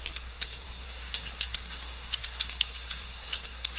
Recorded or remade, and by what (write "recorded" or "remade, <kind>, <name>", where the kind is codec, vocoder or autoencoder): remade, codec, SNAC